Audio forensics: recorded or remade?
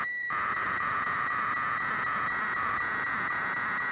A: remade